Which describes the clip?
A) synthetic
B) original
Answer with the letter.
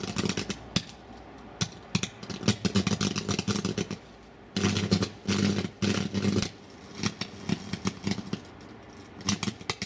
B